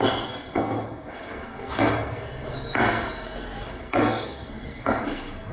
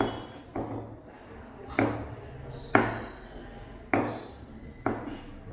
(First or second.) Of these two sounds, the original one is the second